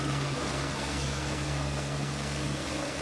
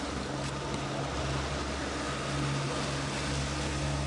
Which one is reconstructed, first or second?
first